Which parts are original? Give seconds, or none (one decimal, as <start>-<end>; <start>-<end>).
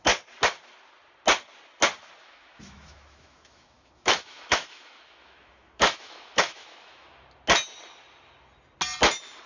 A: 0.0-2.2; 7.1-9.5